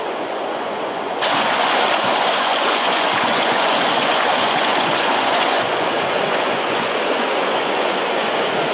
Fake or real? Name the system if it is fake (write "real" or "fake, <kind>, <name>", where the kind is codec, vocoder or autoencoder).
fake, vocoder, Vocos